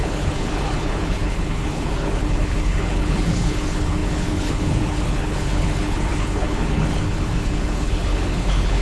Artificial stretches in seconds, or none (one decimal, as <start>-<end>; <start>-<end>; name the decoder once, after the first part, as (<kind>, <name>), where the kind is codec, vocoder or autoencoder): 0.0-8.8 (codec, HILCodec)